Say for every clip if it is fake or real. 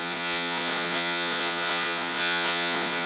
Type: fake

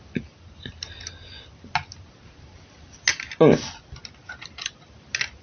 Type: real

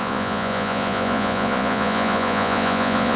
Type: fake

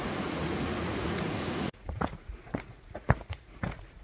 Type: fake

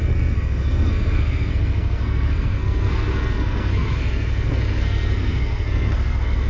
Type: fake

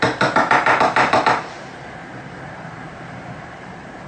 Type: fake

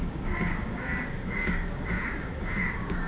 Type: fake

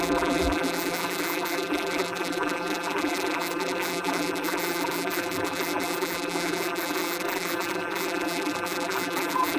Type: fake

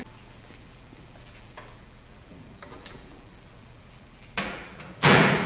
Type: fake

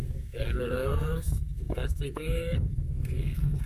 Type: fake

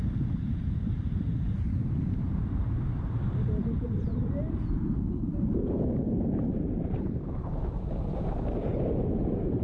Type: fake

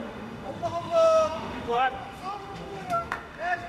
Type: fake